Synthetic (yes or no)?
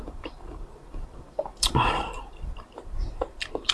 yes